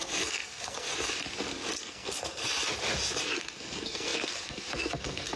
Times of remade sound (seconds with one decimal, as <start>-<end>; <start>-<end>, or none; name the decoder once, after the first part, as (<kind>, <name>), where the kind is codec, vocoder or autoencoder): 0.0-0.9 (codec, SNAC); 1.8-2.4; 3.2-5.4